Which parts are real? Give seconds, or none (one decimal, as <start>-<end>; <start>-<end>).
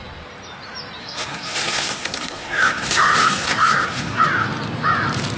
0.0-1.0; 4.2-5.4